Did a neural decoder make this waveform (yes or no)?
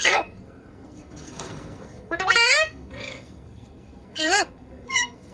yes